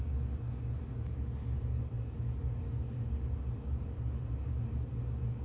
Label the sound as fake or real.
real